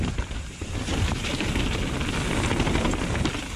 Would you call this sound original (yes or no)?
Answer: yes